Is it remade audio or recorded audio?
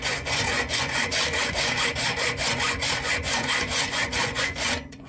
remade